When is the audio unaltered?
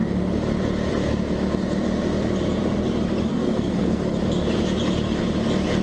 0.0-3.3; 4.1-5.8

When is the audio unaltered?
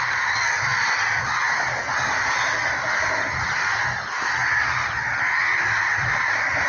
0.0-6.7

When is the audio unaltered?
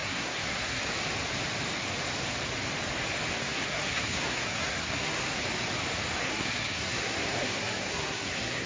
0.8-3.4; 5.2-6.2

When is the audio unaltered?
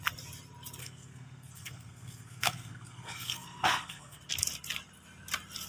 0.0-0.8; 4.2-5.7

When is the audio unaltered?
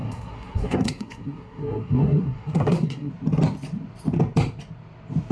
3.1-5.3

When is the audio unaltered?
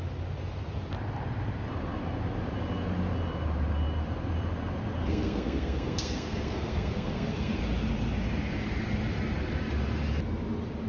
0.0-5.0; 7.6-10.9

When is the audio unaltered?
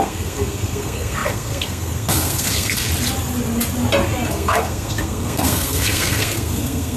2.9-4.3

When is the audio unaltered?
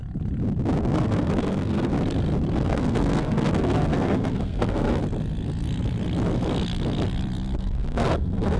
0.0-0.9; 1.9-2.5; 5.0-7.6